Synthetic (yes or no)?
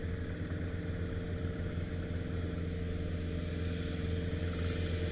no